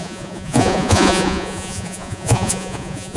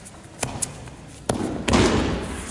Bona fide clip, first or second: second